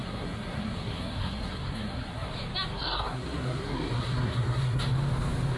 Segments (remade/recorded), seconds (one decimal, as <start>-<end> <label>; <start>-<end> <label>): 0.0-2.3 remade; 2.3-2.7 recorded; 2.7-4.8 remade; 4.8-5.6 recorded